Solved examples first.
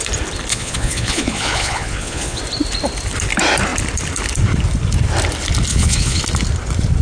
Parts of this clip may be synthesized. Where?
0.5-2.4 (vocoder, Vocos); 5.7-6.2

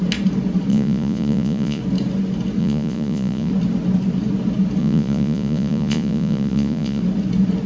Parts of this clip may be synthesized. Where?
0.7-1.8 (vocoder, Vocos); 2.6-3.5; 4.8-7.0

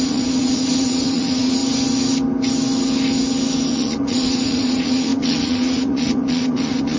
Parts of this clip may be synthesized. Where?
0.0-1.6 (vocoder, Vocos); 3.7-7.0

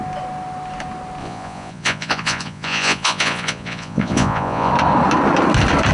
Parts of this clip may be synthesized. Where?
1.2-4.7 (vocoder, Vocos)

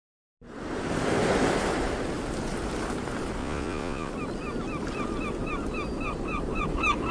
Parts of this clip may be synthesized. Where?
3.4-4.1 (vocoder, Vocos)

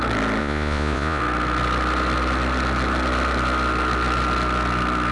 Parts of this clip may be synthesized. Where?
0.4-1.2 (vocoder, Vocos)

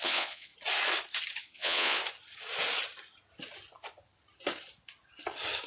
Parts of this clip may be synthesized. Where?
0.0-0.5 (vocoder, Vocos); 1.4-2.0

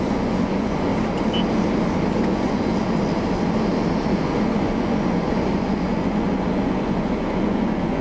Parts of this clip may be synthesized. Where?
0.0-0.9 (vocoder, Vocos); 2.2-2.7; 4.1-8.0